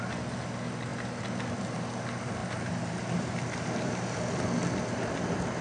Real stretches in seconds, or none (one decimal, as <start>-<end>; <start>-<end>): 0.0-5.6